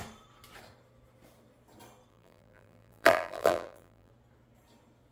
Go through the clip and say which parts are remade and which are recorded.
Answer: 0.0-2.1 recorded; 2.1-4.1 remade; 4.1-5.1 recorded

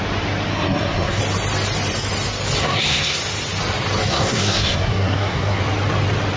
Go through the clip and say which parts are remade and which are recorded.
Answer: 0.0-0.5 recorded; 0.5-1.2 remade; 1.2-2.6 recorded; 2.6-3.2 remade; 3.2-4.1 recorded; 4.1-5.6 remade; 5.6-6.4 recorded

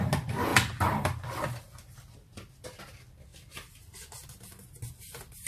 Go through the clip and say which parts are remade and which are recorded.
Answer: 0.0-0.5 recorded; 0.5-2.8 remade; 2.8-5.5 recorded

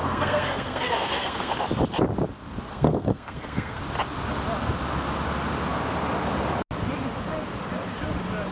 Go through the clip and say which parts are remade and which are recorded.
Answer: 0.0-1.5 remade; 1.5-2.7 recorded; 2.7-3.8 remade; 3.8-8.5 recorded

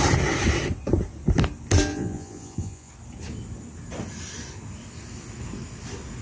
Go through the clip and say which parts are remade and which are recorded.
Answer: 0.0-1.9 recorded; 1.9-2.9 remade; 2.9-6.2 recorded

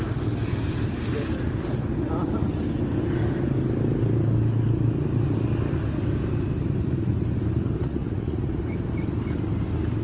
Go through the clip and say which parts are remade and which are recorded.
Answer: 0.0-7.8 recorded; 7.8-8.6 remade; 8.6-10.0 recorded